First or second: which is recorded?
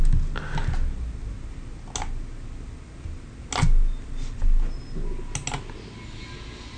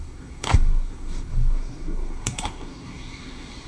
first